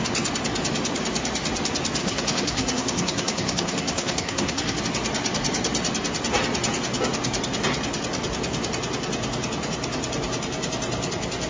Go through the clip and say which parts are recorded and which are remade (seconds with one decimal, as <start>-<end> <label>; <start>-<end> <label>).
0.0-2.0 recorded; 2.0-4.8 remade; 4.8-11.5 recorded